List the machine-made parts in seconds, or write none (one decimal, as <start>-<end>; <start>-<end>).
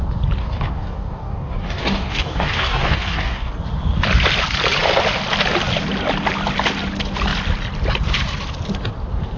0.4-3.5